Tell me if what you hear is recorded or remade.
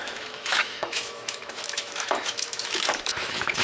remade